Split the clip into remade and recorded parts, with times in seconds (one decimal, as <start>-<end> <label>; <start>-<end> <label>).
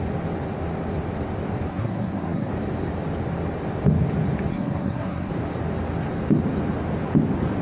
0.0-1.7 recorded; 1.7-2.5 remade; 2.5-4.5 recorded; 4.5-5.3 remade; 5.3-7.6 recorded